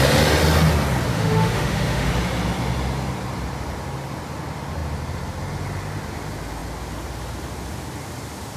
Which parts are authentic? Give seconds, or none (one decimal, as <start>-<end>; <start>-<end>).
0.0-1.1; 2.1-8.6